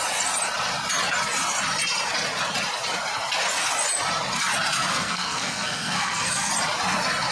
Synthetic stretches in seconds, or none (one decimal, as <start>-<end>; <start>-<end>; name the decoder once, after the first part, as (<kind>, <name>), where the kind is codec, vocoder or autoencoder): 4.9-6.5 (codec, SNAC)